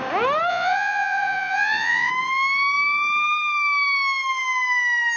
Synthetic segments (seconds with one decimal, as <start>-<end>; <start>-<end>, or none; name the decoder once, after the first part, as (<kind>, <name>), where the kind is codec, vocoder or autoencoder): 0.5-2.1 (vocoder, Vocos)